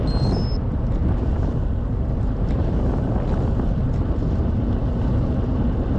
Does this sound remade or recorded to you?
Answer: recorded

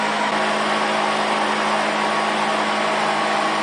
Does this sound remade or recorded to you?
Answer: recorded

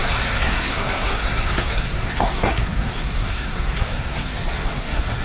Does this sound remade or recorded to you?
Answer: remade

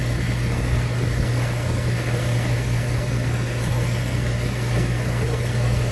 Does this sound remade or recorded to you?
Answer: remade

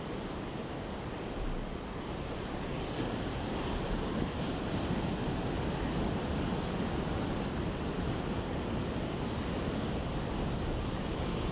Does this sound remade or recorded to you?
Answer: recorded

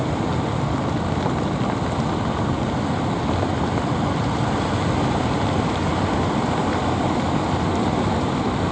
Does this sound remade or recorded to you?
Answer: recorded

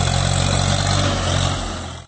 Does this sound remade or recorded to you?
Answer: recorded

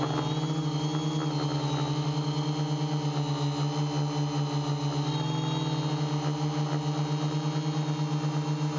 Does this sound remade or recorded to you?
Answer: recorded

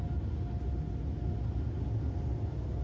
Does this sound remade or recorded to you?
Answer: recorded